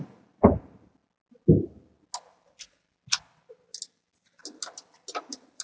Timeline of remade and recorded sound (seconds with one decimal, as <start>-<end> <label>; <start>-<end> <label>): 0.0-5.6 recorded